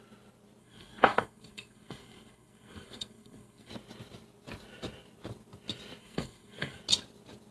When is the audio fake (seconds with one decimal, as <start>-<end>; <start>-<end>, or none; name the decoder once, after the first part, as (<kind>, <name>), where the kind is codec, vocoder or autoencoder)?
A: 0.6-3.7 (codec, SNAC); 6.0-6.8

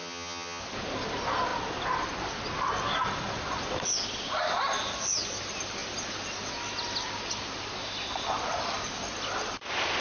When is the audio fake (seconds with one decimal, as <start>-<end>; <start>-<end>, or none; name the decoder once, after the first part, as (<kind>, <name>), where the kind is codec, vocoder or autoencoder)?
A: 0.0-0.6 (vocoder, HiFi-GAN)